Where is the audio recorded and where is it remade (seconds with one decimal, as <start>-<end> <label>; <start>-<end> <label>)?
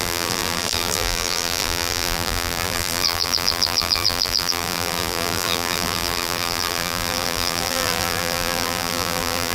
0.0-9.5 remade